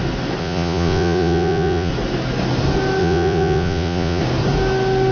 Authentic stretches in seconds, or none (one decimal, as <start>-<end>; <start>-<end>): 0.0-0.4; 1.9-3.0; 4.2-5.1